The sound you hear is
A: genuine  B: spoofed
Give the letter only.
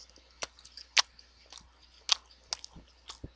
A